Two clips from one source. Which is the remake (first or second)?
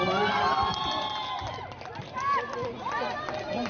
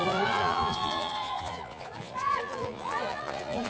second